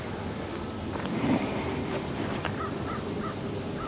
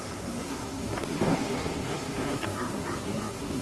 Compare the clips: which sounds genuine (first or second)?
first